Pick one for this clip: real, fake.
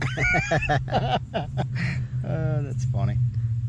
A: real